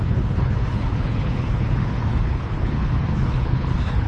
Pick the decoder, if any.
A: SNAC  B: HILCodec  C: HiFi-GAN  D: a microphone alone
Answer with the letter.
B